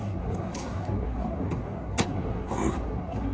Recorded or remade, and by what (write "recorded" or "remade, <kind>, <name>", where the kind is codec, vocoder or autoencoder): remade, codec, SNAC